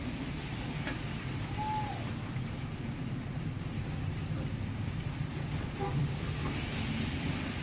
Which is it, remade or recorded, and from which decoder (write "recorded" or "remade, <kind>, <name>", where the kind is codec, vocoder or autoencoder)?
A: recorded